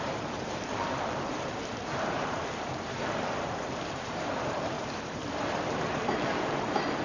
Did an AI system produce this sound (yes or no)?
yes